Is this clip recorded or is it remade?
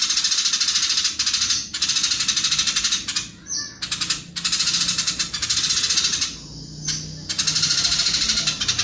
recorded